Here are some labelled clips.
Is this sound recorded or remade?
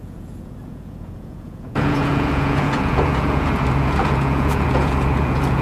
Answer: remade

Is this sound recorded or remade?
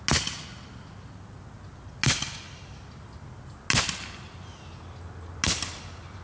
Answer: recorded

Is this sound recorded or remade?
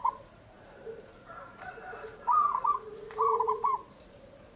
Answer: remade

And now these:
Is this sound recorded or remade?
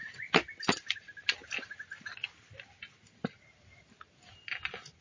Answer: recorded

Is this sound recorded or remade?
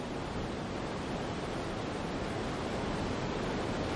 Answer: recorded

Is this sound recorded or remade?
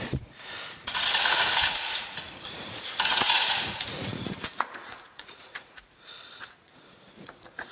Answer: remade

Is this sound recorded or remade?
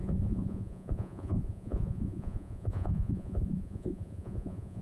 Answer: remade